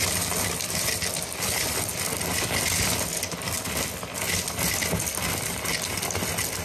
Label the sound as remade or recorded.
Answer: recorded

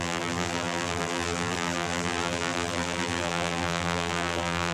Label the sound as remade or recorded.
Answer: remade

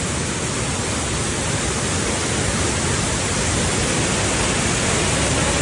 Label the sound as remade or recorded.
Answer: recorded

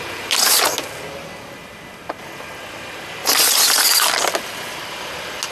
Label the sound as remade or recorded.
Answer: recorded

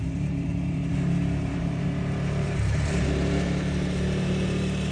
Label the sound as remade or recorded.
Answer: remade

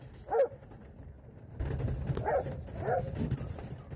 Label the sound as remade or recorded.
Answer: recorded